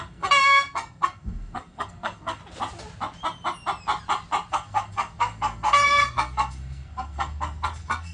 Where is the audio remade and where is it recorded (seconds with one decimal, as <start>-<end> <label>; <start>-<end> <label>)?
0.0-2.4 remade; 2.4-4.5 recorded; 4.5-8.1 remade